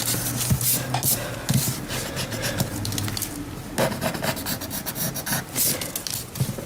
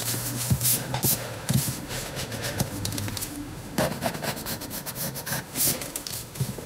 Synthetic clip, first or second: second